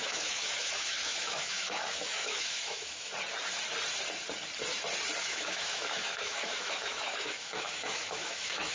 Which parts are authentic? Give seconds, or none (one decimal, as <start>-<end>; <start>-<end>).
3.1-5.2